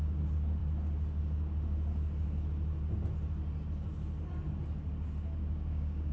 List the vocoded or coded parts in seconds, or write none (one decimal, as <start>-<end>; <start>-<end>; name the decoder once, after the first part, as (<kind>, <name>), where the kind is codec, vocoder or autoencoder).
5.4-6.1 (codec, DAC)

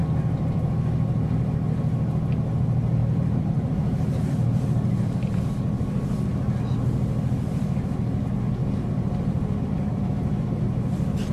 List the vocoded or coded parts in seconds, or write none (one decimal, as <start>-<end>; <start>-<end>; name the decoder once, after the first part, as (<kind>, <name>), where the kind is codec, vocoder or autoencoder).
0.0-0.7 (vocoder, BigVGAN v2); 3.0-5.5

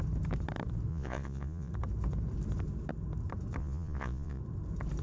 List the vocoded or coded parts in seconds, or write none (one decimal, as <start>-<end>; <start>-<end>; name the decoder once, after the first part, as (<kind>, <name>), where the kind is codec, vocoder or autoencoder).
0.9-1.7 (vocoder, Vocos); 3.6-4.4

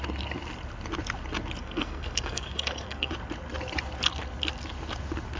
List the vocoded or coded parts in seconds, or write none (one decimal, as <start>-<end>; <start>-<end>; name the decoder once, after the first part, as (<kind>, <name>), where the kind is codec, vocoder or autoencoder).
1.6-3.1 (codec, SNAC)

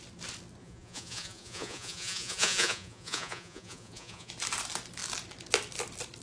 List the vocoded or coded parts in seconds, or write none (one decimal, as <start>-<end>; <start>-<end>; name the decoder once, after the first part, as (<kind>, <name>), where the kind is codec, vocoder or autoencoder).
0.6-4.3 (vocoder, Vocos)